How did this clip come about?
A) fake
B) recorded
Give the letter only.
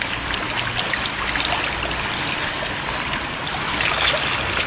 B